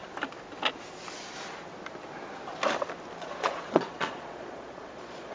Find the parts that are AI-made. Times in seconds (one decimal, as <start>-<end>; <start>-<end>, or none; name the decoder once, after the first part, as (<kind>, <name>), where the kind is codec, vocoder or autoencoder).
3.2-5.3 (vocoder, Vocos)